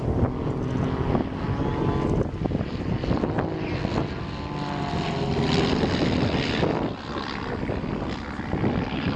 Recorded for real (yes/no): yes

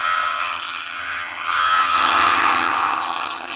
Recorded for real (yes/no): no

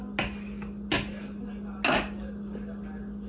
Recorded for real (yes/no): yes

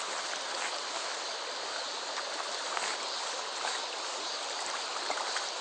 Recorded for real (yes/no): yes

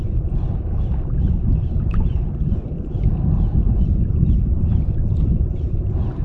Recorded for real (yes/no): yes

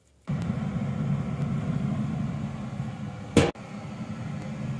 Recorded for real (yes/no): yes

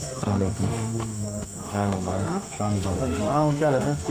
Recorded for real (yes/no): no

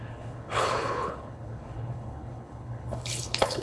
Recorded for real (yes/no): no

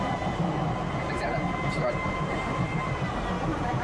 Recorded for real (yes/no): yes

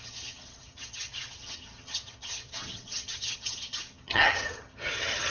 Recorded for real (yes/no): no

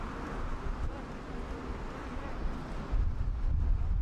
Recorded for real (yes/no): yes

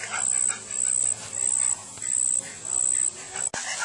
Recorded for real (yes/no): yes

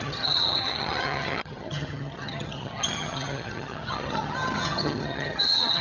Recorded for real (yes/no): no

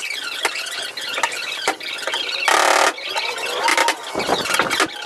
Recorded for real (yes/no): yes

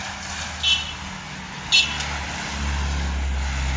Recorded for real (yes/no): yes